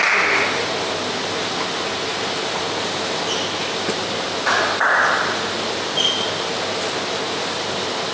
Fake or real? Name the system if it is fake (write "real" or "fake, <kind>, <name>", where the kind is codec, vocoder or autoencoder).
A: real